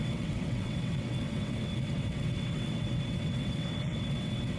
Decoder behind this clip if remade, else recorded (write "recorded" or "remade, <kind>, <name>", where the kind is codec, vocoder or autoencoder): remade, vocoder, WaveNeXt